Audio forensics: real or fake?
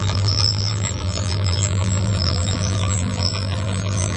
fake